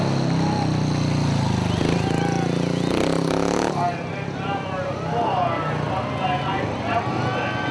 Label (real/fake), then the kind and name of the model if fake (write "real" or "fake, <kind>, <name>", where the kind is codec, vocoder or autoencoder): real